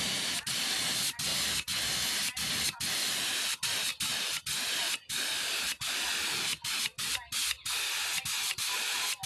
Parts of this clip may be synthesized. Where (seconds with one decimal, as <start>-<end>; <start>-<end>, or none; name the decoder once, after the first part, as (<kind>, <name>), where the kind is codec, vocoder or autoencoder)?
none